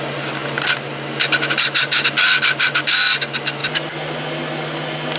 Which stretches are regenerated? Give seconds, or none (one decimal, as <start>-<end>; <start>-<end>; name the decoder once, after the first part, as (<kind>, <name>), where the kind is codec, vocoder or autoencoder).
none